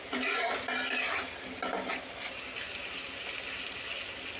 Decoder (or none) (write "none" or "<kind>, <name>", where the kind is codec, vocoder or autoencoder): none